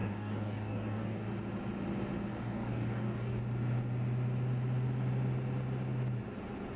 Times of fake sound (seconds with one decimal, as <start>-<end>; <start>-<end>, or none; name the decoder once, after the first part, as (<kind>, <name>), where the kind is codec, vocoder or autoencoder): 0.0-1.3 (codec, DAC); 2.3-3.4